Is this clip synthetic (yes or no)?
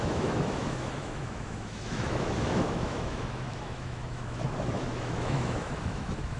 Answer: yes